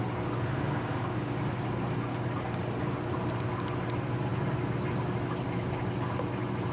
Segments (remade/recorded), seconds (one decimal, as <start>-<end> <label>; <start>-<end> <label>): 0.0-6.7 recorded